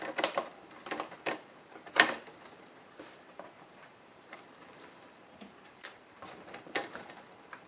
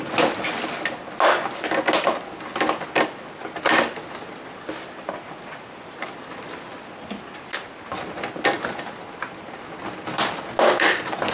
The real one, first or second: second